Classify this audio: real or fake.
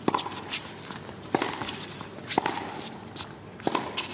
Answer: real